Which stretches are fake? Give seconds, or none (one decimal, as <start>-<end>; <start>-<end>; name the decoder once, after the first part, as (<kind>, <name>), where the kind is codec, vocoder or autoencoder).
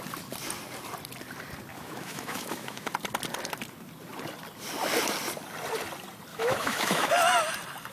1.7-2.9 (autoencoder, DAC-VAE); 6.3-7.1